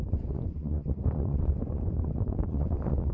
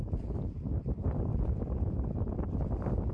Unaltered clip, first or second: second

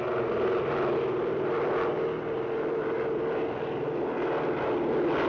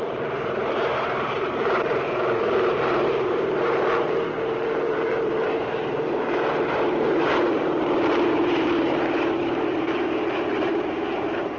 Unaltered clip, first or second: first